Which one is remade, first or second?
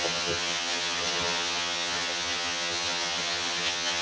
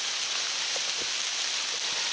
first